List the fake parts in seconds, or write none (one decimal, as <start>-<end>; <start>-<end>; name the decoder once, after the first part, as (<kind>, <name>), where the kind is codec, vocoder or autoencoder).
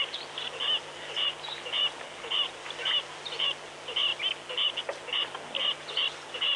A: none